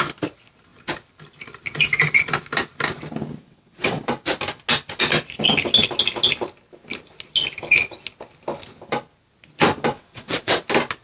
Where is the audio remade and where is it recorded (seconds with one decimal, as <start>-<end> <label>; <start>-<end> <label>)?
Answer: 0.0-3.4 recorded; 3.4-4.0 remade; 4.0-9.9 recorded; 9.9-10.6 remade; 10.6-11.0 recorded